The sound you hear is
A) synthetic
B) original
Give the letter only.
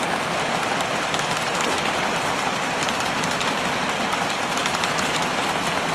A